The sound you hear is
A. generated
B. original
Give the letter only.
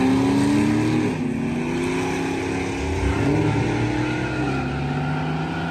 B